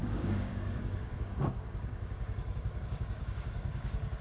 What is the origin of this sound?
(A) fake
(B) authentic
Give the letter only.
A